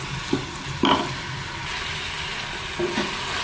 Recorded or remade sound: recorded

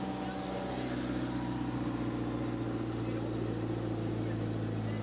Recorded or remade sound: recorded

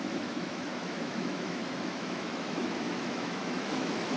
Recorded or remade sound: remade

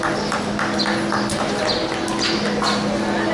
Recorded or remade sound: recorded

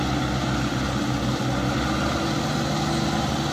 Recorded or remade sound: recorded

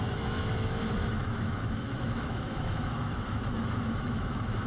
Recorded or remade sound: remade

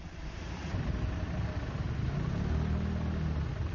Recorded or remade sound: recorded